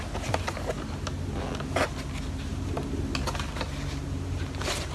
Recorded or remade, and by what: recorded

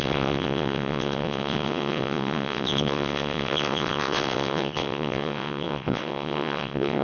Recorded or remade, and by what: remade, vocoder, WaveNeXt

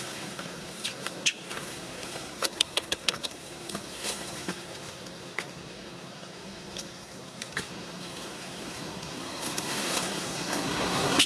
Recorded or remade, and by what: remade, codec, SNAC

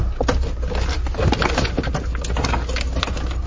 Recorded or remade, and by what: recorded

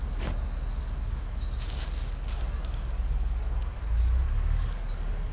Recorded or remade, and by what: remade, codec, DAC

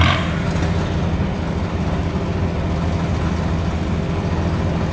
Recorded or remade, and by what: recorded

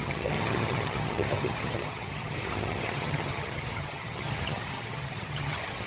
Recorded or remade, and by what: remade, vocoder, HiFi-GAN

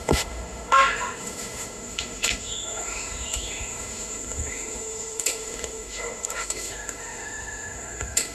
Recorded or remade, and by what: remade, autoencoder, DAC-VAE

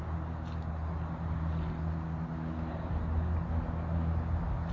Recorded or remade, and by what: recorded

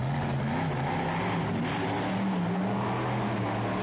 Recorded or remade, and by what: recorded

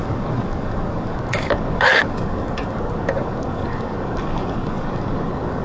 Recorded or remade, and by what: remade, codec, DAC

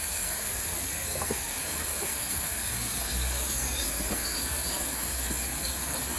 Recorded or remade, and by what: remade, codec, SNAC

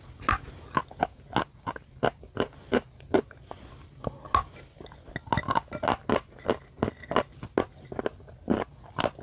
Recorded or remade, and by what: recorded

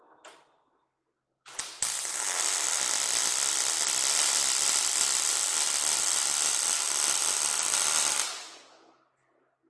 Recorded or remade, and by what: recorded